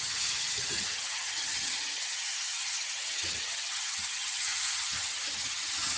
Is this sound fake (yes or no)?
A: yes